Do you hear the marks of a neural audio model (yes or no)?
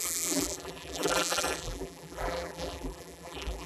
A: yes